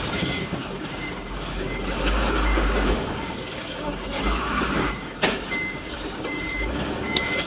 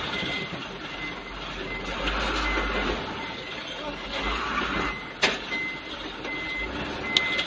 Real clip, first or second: second